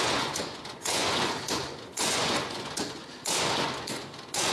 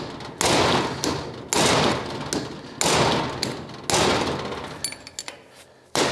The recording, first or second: second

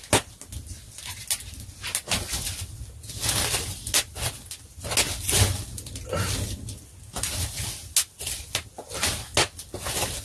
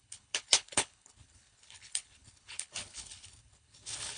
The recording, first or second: first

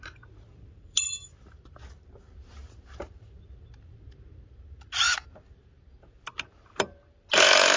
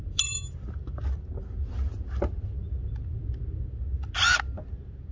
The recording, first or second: second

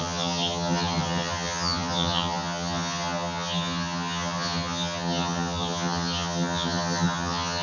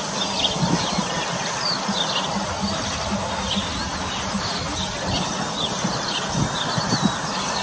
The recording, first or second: second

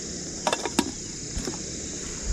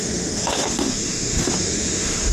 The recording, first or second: first